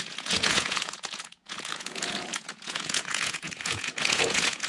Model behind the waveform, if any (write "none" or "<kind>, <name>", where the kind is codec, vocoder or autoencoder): vocoder, Vocos